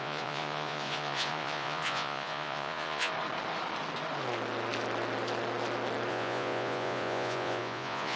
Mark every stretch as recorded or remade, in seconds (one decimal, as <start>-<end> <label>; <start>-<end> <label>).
0.0-3.1 remade; 3.1-6.1 recorded; 6.1-8.2 remade